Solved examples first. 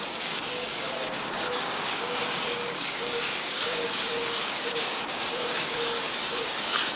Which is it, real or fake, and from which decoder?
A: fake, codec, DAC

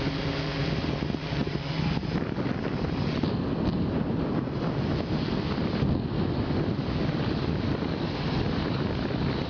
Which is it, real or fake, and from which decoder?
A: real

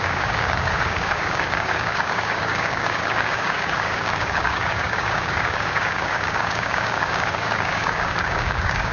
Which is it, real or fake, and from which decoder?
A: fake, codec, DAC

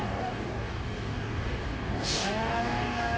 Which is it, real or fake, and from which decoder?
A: fake, codec, DAC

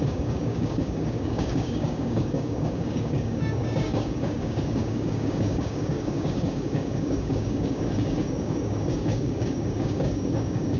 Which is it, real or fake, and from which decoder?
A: fake, codec, DAC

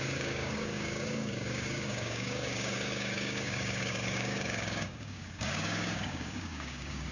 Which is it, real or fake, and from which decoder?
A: fake, codec, DAC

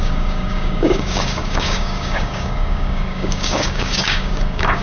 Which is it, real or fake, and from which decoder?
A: fake, codec, DAC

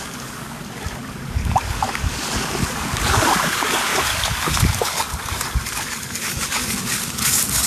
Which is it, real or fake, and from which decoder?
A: fake, codec, DAC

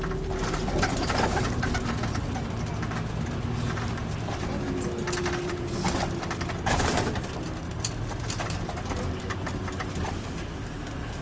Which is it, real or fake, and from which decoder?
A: real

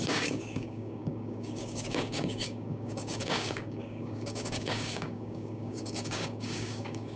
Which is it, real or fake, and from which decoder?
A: fake, codec, DAC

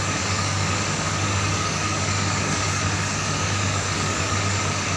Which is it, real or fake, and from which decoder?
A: fake, codec, DAC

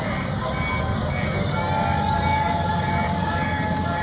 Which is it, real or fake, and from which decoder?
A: fake, codec, DAC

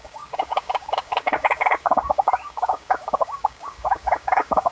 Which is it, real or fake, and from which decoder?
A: fake, codec, DAC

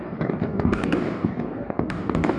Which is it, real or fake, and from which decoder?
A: fake, codec, DAC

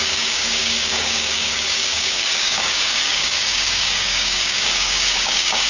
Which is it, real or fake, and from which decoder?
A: fake, codec, DAC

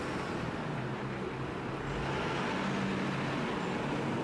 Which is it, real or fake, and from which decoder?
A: real